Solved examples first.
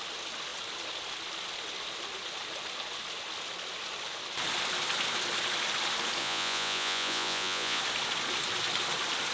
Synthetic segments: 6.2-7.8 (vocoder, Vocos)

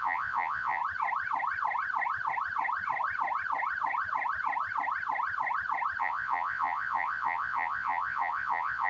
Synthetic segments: 0.0-0.8 (vocoder, Vocos); 6.0-8.9

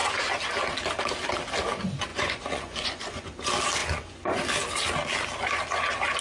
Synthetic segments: 2.1-3.3 (vocoder, Vocos); 3.8-4.4